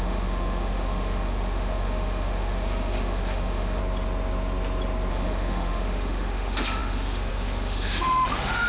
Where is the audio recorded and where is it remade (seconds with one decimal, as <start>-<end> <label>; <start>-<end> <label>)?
0.0-3.8 remade; 3.8-5.1 recorded; 5.1-8.7 remade